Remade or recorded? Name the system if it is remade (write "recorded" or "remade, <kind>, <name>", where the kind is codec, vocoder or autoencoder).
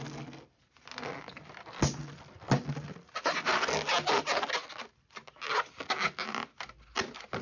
recorded